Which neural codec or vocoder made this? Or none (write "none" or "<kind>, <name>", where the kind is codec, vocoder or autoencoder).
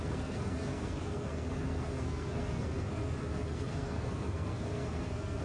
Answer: codec, SNAC